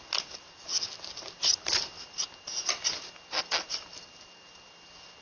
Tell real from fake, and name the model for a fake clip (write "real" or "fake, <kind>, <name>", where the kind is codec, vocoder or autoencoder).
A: real